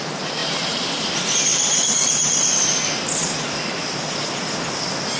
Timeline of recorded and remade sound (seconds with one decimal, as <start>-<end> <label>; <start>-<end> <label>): 0.0-1.5 recorded; 1.5-2.6 remade; 2.6-5.2 recorded